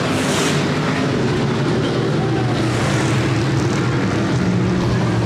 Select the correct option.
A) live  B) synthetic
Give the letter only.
A